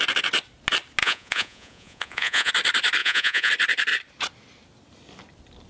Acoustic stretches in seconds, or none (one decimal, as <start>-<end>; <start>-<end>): 0.0-1.0; 2.5-3.0; 3.5-5.7